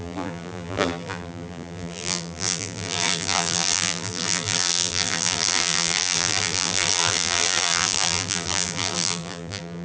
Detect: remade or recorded remade